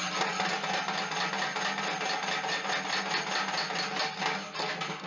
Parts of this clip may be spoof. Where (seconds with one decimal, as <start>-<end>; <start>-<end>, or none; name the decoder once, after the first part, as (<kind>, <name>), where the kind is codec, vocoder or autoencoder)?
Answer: none